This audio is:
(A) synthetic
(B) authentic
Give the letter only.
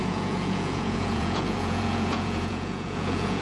A